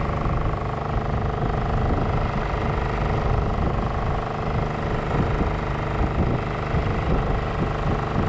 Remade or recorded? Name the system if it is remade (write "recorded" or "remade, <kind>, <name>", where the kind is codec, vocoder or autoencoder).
recorded